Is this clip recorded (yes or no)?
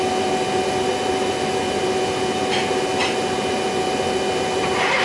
yes